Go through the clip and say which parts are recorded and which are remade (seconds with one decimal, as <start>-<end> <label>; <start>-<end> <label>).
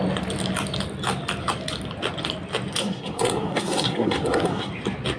0.0-2.8 recorded; 2.8-4.7 remade; 4.7-5.2 recorded